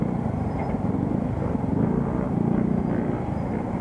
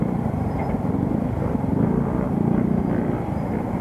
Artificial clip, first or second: second